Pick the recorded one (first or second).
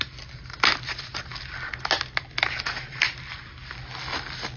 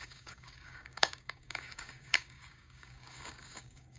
first